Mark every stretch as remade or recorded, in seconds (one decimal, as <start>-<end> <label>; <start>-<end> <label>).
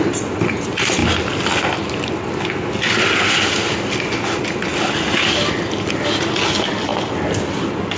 0.0-8.0 recorded